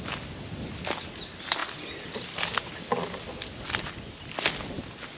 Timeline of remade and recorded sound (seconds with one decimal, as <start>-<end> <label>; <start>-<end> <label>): 0.0-5.2 recorded